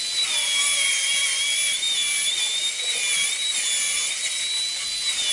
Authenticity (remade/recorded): recorded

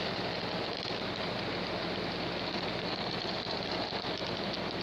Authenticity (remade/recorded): recorded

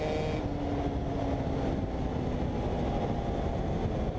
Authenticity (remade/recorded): recorded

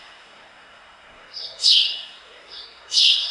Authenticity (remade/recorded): remade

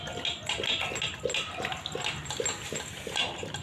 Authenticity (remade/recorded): recorded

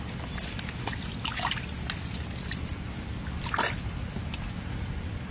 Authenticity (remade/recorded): recorded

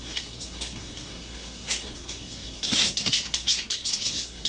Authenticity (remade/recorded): remade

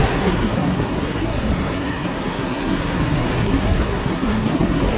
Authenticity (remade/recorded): remade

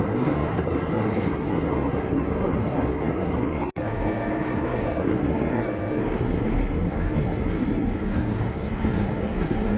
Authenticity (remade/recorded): remade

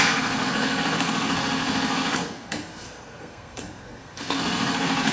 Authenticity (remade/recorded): remade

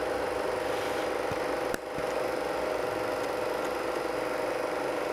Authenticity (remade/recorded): recorded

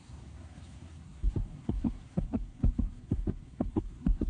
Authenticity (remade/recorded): remade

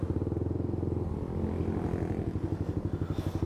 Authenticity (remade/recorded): recorded